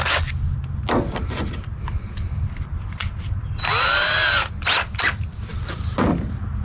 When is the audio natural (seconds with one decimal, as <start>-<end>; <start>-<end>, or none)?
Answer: 0.0-6.6